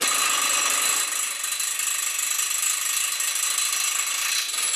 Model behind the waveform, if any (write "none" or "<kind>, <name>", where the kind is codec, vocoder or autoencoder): none